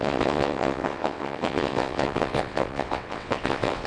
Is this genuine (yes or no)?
no